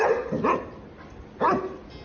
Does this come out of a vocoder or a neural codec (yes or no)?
no